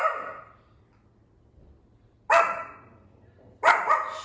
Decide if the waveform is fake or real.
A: real